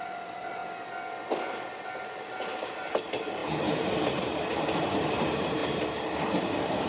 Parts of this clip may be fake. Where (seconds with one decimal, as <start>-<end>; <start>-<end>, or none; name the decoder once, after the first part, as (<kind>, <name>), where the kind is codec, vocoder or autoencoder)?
0.0-0.6 (vocoder, BigVGAN v2); 2.9-3.4; 4.1-5.6